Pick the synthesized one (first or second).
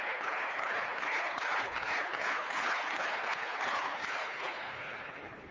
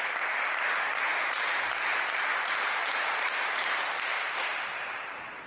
first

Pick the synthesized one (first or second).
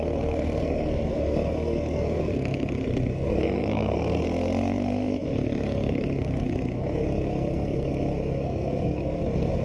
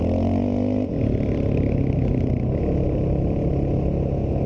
first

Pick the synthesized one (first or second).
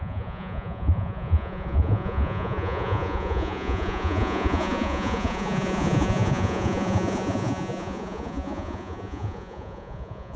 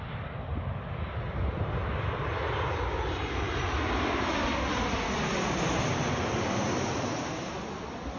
first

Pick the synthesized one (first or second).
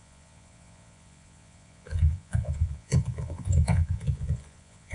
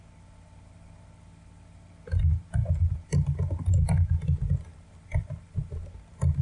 first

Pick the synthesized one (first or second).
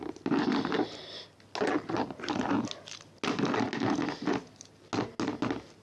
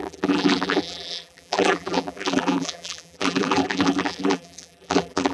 second